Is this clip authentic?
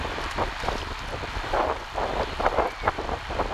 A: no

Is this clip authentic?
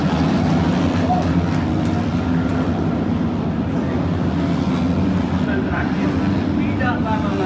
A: yes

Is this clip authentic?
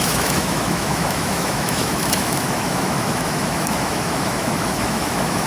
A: no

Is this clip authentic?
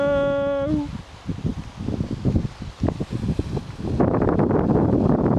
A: yes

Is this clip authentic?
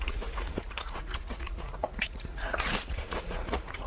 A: no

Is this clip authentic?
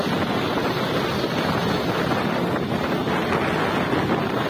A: yes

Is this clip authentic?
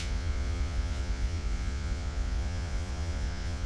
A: no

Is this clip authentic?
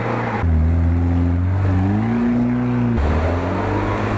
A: yes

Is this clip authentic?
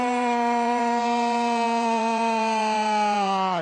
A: no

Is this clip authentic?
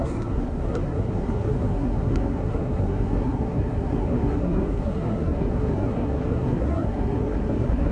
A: no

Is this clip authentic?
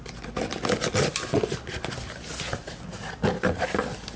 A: yes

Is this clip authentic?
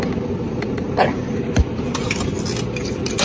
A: yes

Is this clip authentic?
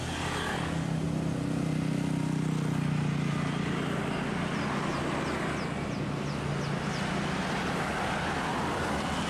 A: yes